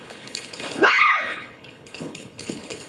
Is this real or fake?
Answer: fake